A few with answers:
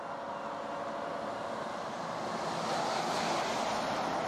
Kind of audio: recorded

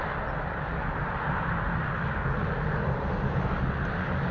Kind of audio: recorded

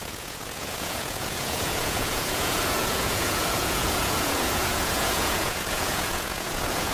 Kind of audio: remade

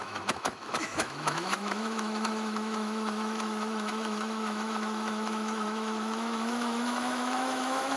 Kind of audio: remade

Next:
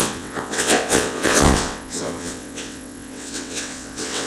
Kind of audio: remade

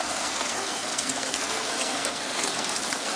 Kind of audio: remade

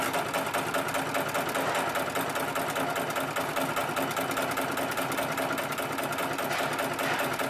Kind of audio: recorded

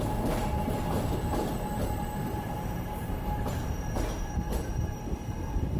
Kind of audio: remade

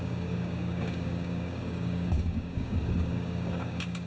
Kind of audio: remade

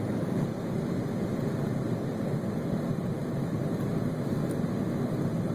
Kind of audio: recorded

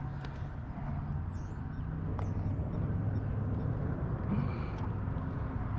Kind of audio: recorded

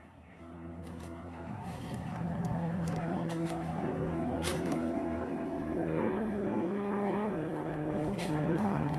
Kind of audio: remade